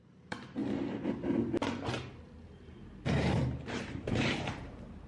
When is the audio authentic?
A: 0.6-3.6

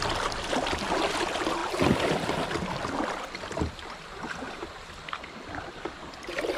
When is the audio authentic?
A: 0.0-6.6

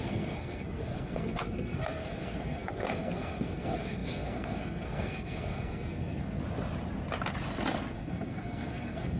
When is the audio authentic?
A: 6.4-7.9

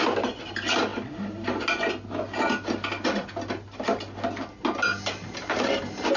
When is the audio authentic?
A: 0.0-6.2